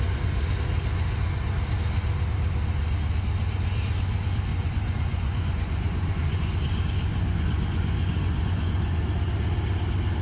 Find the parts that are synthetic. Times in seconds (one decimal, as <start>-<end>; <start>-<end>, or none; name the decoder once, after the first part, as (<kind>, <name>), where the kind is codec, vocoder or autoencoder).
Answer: 4.5-6.5 (vocoder, Vocos); 7.1-9.0